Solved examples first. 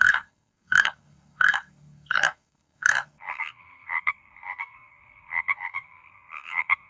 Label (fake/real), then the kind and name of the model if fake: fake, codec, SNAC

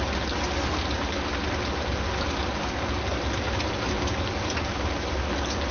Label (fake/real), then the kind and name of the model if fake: real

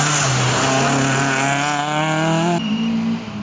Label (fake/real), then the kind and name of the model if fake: real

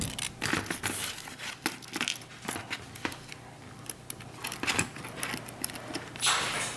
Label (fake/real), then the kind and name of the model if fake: real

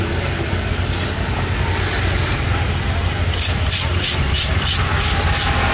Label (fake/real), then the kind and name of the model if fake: real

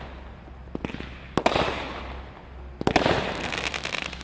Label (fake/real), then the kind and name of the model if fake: real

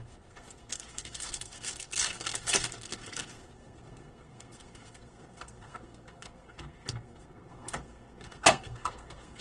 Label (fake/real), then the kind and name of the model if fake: fake, codec, SNAC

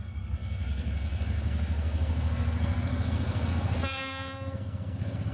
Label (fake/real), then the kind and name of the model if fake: fake, codec, SNAC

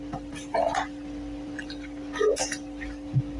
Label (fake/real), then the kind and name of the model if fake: real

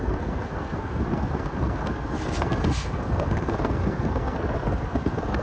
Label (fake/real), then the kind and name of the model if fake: fake, codec, SNAC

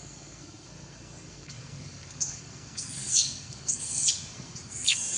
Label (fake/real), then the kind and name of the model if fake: fake, codec, SNAC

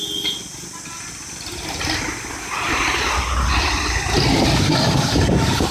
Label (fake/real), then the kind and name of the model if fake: real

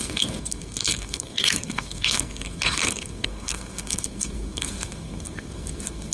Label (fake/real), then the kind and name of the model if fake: fake, codec, SNAC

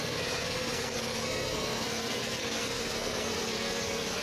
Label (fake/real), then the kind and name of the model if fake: fake, codec, SNAC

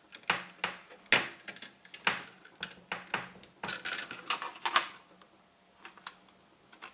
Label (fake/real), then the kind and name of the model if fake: real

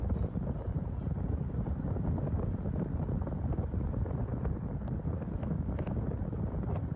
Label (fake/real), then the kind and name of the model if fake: real